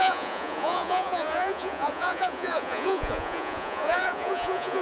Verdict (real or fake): fake